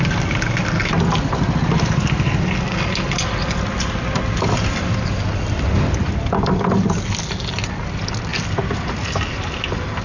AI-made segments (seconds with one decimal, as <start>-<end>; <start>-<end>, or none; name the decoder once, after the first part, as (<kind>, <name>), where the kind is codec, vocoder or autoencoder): none